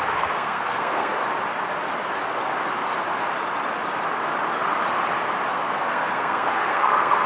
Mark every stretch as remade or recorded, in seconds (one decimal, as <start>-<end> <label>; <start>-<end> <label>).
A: 0.0-1.1 remade; 1.1-5.5 recorded; 5.5-7.3 remade